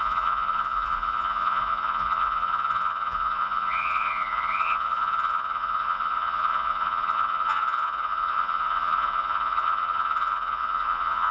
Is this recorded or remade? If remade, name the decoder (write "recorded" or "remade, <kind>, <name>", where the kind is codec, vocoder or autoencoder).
remade, vocoder, Vocos